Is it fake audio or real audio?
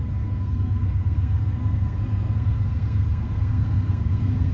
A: fake